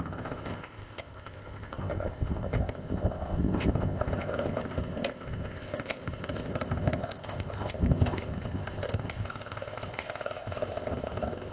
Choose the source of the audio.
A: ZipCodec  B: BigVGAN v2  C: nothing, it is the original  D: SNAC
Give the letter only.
A